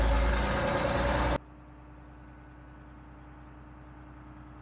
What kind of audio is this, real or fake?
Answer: real